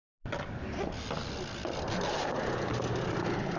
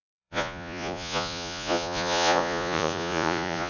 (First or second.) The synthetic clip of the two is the second